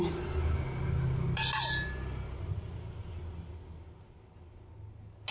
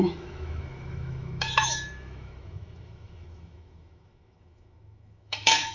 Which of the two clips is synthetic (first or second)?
second